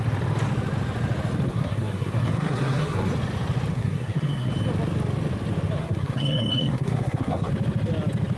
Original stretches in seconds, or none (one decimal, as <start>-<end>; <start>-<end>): 0.0-1.5; 3.1-3.7; 4.5-5.8; 7.5-8.4